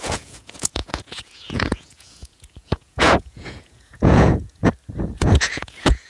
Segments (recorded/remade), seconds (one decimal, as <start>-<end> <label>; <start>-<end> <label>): 0.0-4.6 remade; 4.6-5.2 recorded; 5.2-6.1 remade